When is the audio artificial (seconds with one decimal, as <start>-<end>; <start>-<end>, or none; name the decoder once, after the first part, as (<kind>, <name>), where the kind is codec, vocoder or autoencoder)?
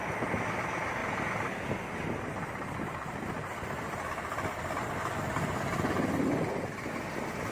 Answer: none